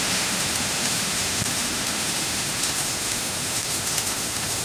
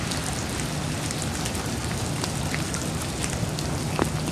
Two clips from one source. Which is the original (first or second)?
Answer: second